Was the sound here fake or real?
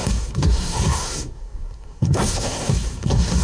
fake